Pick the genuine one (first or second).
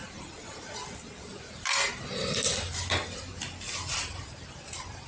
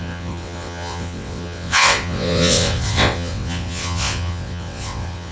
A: first